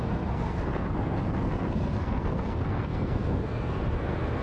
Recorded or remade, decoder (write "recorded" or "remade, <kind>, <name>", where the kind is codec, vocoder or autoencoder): remade, codec, SNAC